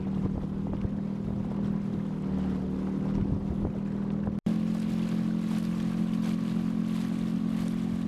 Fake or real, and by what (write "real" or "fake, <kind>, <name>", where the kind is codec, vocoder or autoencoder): real